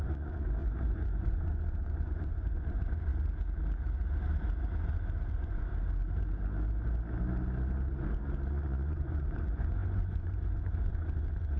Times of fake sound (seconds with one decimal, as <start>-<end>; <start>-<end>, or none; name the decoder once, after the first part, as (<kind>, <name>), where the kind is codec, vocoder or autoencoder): 0.0-3.1 (vocoder, Vocos); 5.3-5.7; 8.5-11.6